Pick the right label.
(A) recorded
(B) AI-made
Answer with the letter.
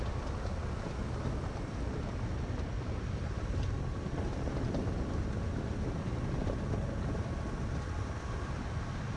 A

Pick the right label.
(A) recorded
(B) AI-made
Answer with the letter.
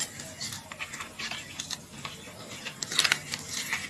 A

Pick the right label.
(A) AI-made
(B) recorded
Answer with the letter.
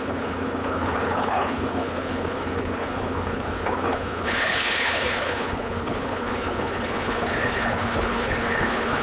A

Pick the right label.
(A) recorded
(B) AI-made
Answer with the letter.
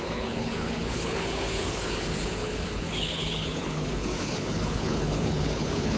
B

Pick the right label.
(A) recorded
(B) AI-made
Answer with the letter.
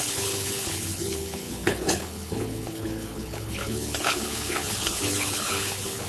B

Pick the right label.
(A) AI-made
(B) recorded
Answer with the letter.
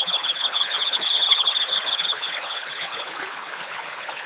A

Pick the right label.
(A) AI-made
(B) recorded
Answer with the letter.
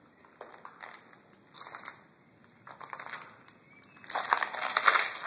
B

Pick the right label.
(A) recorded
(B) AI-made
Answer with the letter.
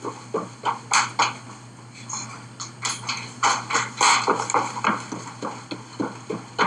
A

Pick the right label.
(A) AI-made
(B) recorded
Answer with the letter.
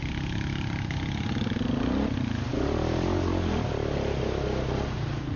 B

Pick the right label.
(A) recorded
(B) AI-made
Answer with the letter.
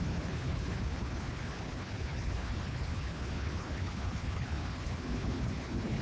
B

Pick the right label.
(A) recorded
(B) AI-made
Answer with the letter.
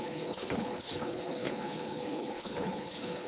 B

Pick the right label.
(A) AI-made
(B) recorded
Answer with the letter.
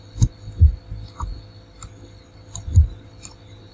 B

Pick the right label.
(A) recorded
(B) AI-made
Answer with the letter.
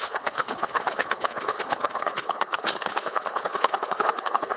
B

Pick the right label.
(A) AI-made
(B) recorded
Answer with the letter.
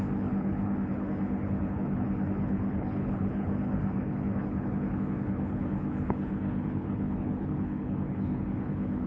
A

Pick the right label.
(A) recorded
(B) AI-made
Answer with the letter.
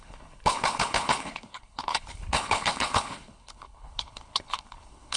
B